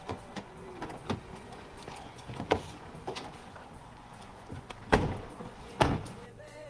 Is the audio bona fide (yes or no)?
no